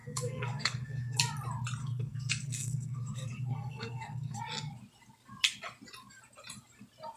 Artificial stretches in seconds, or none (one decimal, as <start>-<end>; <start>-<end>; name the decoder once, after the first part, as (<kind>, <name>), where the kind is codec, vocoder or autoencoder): 0.0-1.2 (codec, SNAC); 1.8-4.4